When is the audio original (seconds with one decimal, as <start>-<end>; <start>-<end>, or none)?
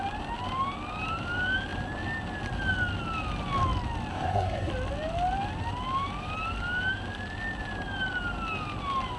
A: 0.0-4.1; 4.7-9.2